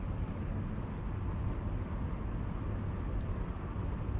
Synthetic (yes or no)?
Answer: no